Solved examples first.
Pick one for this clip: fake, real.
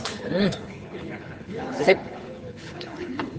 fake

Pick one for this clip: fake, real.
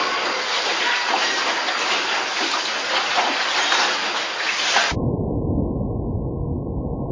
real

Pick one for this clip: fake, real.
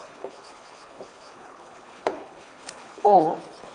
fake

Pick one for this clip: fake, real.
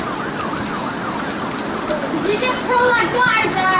real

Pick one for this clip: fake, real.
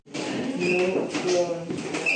real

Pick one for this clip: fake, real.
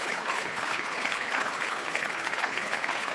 fake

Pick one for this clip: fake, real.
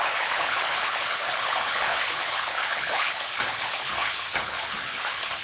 fake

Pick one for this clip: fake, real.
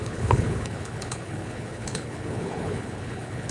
fake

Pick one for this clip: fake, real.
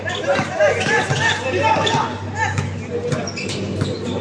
real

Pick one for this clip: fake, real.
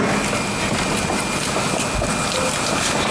real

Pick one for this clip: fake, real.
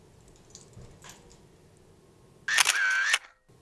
real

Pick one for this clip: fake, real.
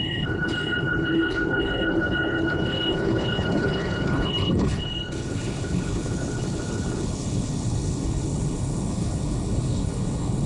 fake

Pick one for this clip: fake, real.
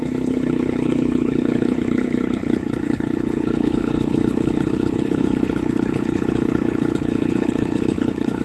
fake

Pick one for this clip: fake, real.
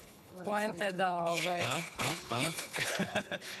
fake